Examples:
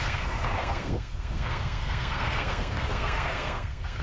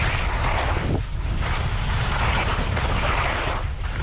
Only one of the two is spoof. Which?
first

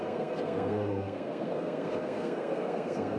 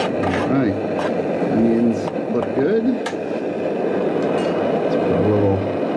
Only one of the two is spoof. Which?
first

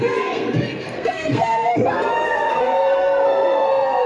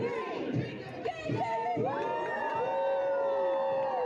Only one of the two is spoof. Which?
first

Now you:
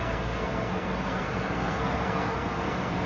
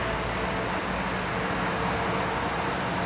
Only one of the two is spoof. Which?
first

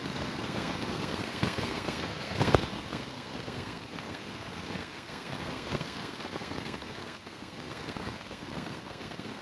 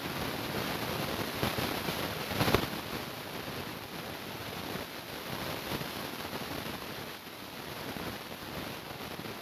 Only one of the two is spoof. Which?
first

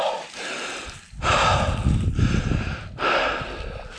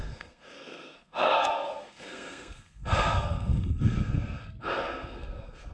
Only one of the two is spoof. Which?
second